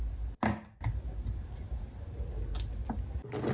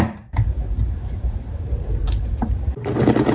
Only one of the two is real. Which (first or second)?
first